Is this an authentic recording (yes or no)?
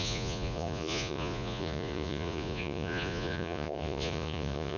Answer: no